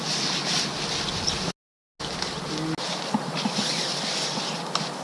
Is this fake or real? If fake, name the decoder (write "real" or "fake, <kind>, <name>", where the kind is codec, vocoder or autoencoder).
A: real